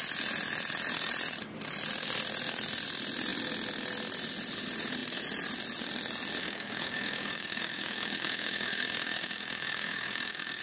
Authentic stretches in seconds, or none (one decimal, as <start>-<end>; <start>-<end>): 0.0-6.4